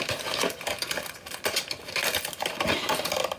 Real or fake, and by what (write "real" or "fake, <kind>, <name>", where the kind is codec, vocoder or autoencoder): real